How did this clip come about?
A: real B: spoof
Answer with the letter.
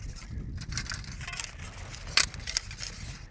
A